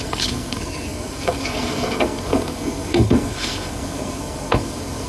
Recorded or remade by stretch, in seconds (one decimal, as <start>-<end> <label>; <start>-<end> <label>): 0.0-5.1 remade